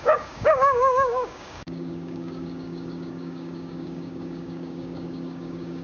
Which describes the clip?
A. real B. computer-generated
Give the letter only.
B